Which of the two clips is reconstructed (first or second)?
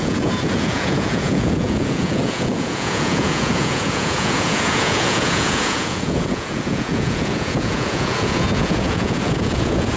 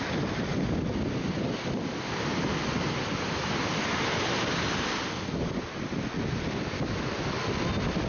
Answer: first